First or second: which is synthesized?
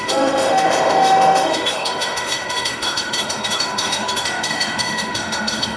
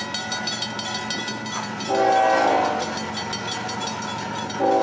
first